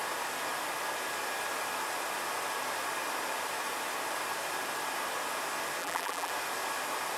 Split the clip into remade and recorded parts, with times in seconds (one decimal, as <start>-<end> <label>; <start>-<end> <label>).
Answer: 0.0-5.8 recorded; 5.8-6.3 remade; 6.3-7.2 recorded